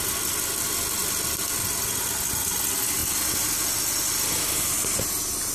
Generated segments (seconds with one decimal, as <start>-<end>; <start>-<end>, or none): none

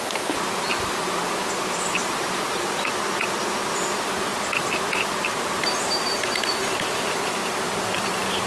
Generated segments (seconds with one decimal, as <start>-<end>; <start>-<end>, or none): 2.0-3.5; 7.4-8.5

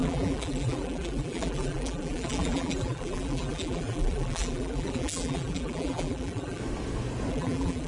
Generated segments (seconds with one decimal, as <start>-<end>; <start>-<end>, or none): 0.0-6.6; 7.3-7.9